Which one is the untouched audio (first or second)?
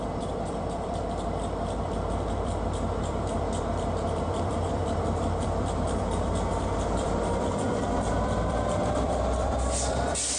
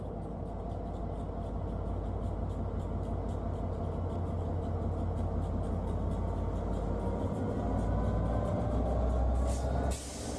second